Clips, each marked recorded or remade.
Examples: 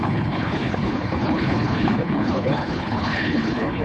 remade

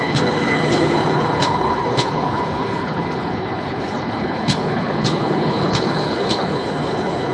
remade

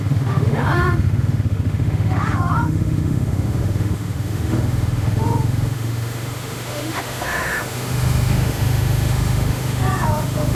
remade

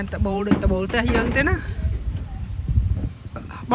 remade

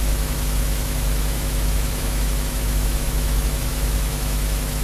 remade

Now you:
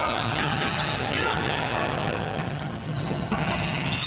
remade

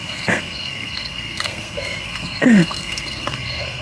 remade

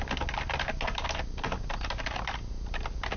recorded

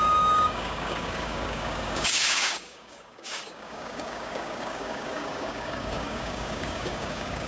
remade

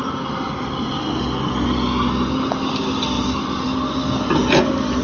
recorded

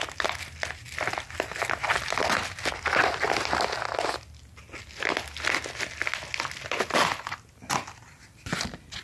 recorded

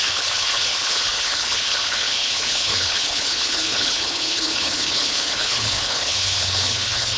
remade